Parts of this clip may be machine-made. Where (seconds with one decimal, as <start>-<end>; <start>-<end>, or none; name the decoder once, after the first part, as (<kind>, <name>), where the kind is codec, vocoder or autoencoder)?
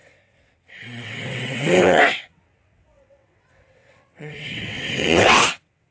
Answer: 0.0-5.9 (vocoder, WaveNeXt)